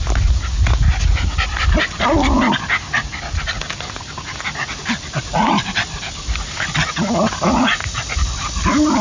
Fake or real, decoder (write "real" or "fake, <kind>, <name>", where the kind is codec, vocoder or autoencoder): real